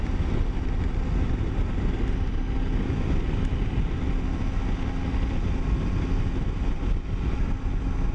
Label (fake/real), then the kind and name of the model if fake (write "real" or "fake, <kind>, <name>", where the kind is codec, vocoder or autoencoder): real